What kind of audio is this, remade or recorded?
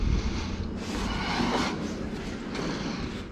recorded